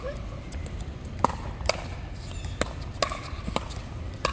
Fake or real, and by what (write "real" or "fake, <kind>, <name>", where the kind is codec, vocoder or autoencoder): real